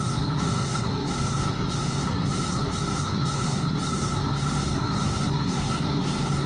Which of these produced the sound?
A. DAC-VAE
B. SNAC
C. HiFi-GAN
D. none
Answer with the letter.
B